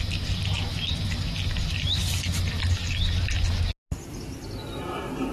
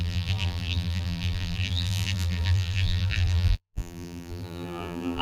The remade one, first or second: second